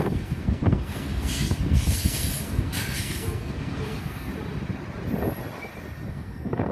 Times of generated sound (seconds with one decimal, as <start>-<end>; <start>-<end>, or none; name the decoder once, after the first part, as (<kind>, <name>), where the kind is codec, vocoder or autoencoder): 0.0-4.3 (codec, SNAC); 6.1-6.7